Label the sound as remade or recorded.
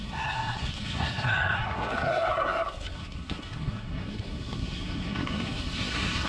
remade